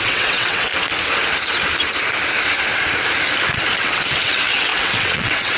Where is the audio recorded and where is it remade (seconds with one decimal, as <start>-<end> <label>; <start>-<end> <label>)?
0.0-0.7 remade; 0.7-3.8 recorded; 3.8-5.6 remade